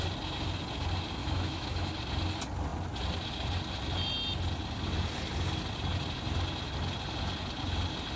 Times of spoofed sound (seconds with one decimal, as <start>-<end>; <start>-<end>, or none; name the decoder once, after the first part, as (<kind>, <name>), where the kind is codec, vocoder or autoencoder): 1.2-1.9 (autoencoder, DAC-VAE)